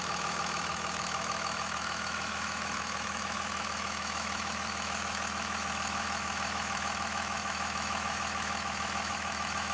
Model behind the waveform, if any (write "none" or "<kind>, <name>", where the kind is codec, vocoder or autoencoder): autoencoder, DAC-VAE